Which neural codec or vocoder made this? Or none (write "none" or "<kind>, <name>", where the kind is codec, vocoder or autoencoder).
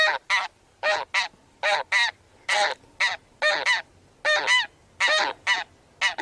none